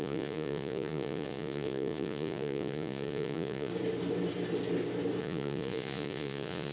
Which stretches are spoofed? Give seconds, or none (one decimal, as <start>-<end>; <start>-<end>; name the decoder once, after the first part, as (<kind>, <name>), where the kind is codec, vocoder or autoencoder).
0.0-3.7 (vocoder, Vocos); 5.2-6.7